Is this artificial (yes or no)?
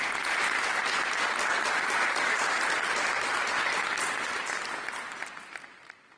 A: no